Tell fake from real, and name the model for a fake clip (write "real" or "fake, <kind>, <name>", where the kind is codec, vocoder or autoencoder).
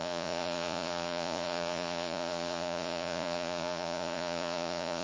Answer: fake, vocoder, Vocos